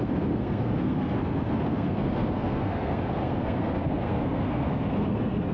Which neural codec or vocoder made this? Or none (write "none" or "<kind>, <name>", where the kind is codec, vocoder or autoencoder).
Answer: codec, SNAC